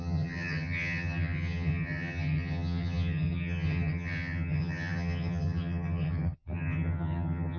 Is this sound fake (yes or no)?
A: yes